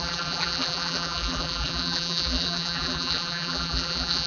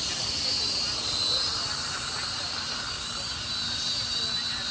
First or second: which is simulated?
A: first